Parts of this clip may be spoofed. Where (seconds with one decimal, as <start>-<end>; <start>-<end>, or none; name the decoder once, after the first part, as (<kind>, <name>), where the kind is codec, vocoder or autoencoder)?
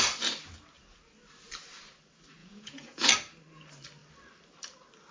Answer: 2.4-3.1 (vocoder, Vocos)